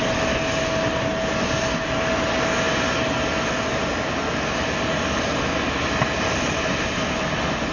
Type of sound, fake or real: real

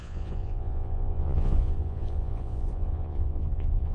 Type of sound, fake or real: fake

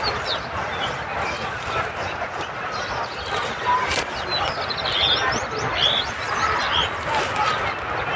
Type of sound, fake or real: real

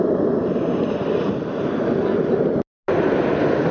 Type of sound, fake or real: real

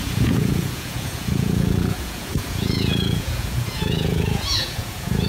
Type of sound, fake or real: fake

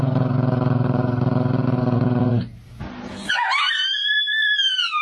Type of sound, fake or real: real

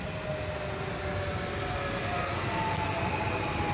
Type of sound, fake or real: real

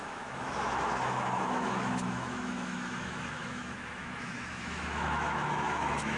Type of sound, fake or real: fake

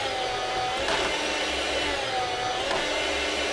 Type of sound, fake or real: real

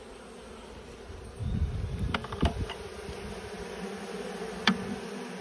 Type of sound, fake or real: real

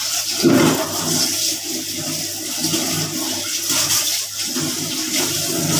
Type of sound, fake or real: real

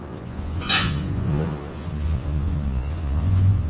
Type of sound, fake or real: fake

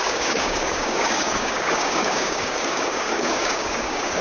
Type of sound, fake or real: fake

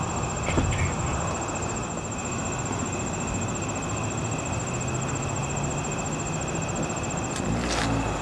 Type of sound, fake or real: real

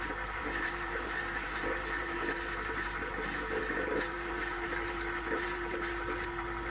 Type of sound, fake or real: fake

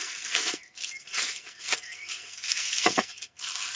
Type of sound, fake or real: fake